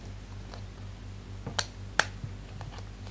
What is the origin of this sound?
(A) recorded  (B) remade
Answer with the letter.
A